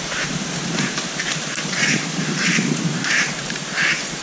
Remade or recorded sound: remade